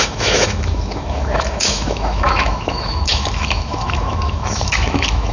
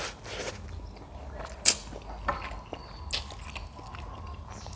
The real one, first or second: second